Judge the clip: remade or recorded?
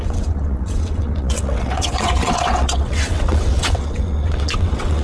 remade